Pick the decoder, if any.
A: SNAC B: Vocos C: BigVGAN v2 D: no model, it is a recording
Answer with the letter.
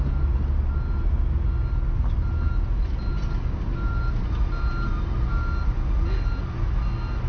D